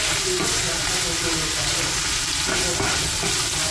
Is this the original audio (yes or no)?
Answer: yes